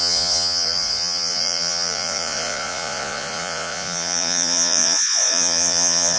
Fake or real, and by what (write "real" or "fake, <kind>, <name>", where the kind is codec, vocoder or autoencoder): fake, vocoder, Vocos